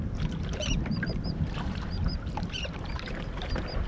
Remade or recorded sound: remade